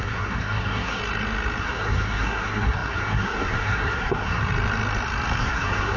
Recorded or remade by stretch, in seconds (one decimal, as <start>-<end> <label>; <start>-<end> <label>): 0.0-1.0 remade; 1.0-1.6 recorded; 1.6-4.4 remade; 4.4-5.4 recorded; 5.4-6.0 remade